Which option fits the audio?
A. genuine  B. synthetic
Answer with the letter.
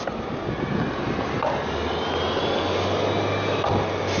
A